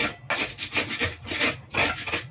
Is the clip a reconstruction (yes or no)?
no